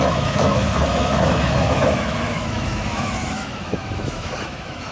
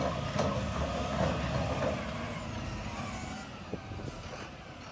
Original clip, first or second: second